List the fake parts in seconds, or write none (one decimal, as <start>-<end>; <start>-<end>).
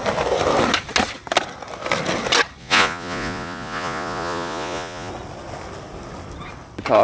2.6-5.1